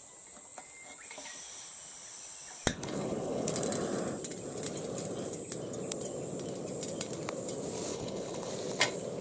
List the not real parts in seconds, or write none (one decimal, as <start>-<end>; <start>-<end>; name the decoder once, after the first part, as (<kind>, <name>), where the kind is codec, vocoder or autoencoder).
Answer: 2.7-3.5 (codec, HILCodec); 7.9-8.5